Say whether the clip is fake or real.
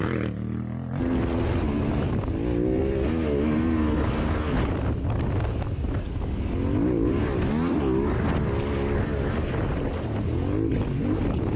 real